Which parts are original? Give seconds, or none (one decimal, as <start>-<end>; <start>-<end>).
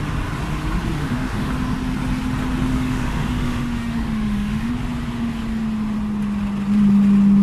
0.0-1.0; 1.5-2.7; 4.7-7.4